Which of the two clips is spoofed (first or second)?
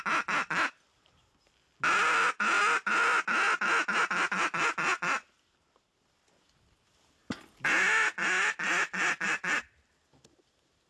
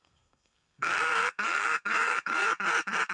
second